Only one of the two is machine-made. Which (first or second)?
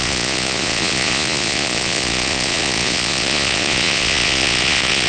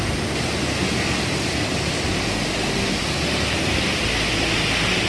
first